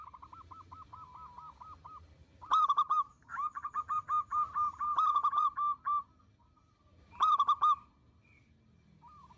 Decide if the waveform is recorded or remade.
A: recorded